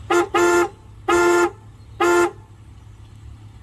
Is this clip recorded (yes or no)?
yes